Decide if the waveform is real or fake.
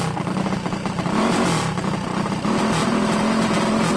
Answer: real